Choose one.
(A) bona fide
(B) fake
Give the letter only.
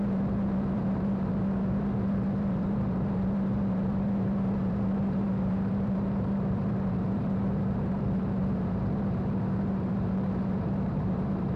B